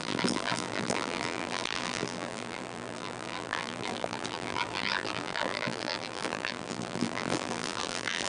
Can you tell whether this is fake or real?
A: fake